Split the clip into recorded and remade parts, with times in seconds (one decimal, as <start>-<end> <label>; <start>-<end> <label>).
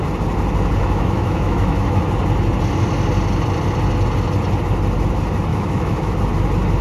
0.0-0.8 recorded; 0.8-2.0 remade; 2.0-5.5 recorded; 5.5-6.1 remade; 6.1-6.8 recorded